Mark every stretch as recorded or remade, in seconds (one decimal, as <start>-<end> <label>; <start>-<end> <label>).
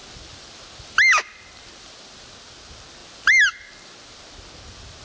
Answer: 0.0-5.0 recorded